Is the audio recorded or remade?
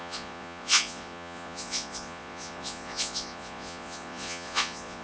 remade